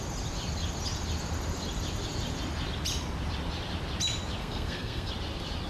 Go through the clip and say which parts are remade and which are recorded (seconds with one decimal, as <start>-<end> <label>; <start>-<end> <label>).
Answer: 0.0-4.4 recorded; 4.4-5.1 remade; 5.1-5.7 recorded